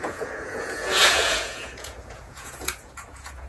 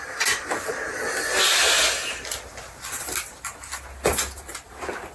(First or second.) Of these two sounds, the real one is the second